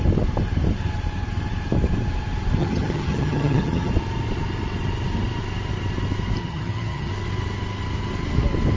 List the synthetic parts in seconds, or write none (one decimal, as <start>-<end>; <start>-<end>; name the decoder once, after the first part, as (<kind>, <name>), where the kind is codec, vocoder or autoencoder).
2.6-3.9 (vocoder, HiFi-GAN); 6.4-7.1